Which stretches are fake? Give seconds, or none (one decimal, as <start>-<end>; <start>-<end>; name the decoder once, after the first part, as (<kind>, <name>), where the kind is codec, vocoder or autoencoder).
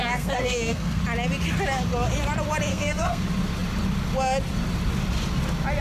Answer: 0.0-1.0 (codec, SNAC); 2.7-3.2